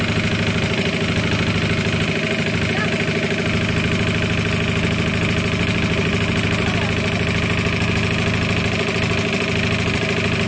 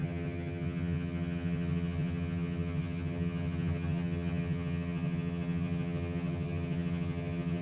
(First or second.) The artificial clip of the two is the second